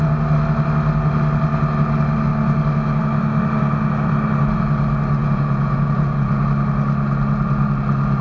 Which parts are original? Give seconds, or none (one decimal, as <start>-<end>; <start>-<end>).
0.0-5.2; 6.4-8.2